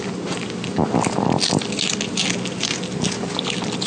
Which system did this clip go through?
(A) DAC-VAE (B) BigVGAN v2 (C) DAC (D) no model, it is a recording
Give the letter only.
D